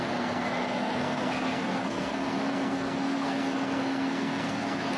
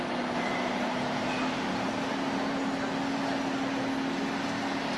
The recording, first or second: second